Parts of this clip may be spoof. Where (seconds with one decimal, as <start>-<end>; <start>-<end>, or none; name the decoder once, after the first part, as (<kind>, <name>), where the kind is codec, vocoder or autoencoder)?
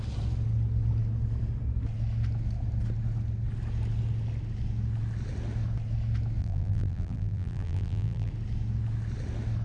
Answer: 6.4-8.3 (vocoder, BigVGAN v2)